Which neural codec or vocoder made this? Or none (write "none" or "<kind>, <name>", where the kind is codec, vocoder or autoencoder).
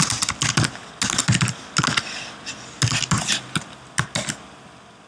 none